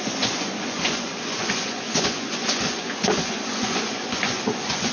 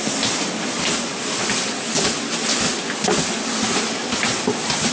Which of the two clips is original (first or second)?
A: second